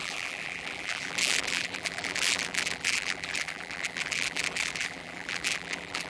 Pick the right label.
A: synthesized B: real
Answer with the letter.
A